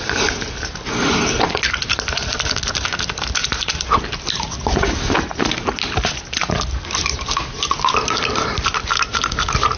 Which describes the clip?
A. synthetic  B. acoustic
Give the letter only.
B